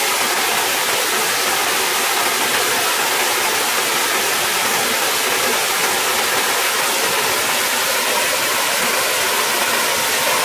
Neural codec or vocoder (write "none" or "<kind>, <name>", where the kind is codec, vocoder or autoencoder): none